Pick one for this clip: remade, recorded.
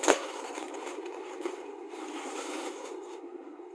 remade